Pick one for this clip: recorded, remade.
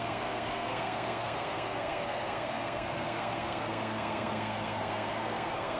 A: remade